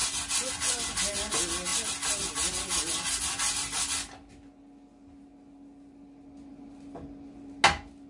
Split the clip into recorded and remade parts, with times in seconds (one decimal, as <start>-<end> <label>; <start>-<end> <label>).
0.0-8.1 recorded